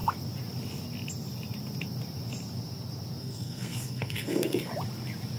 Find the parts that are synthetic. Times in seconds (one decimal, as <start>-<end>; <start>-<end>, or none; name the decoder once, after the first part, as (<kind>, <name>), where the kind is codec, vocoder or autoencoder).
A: 3.2-4.7 (codec, SNAC)